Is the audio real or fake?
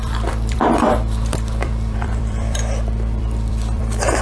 fake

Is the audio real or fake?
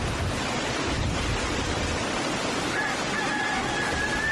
real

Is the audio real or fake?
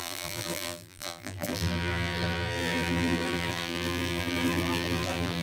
fake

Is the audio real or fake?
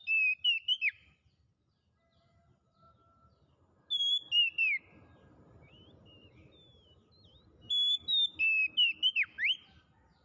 real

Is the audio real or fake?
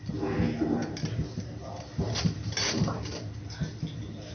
real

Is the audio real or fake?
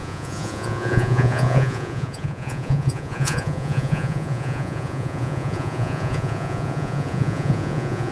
fake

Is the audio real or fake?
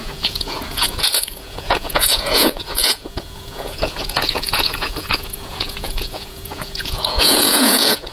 fake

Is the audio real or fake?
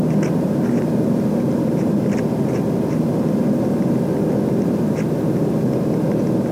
real